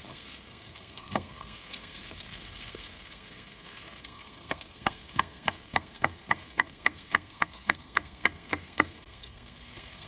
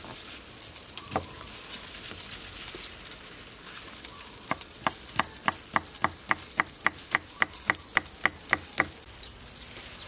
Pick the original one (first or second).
second